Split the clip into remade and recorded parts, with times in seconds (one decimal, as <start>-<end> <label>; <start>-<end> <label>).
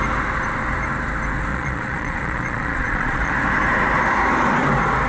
0.0-1.5 recorded; 1.5-3.3 remade; 3.3-5.1 recorded